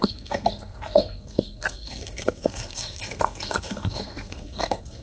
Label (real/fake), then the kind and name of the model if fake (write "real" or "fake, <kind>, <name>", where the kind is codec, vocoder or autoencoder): fake, codec, SNAC